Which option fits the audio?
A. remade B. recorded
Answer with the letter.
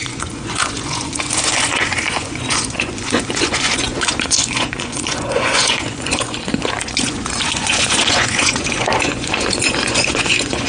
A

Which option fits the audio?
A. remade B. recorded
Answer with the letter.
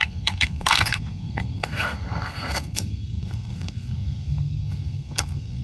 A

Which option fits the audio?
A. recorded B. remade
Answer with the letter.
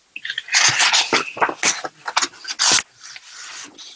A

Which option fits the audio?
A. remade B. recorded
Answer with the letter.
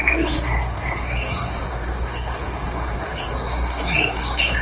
A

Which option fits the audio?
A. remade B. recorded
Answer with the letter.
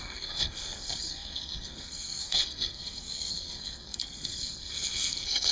A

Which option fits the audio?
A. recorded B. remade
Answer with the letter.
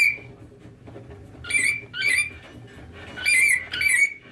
A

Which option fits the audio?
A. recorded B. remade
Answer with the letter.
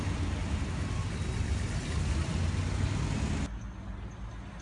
A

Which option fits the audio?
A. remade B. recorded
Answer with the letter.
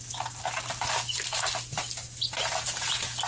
B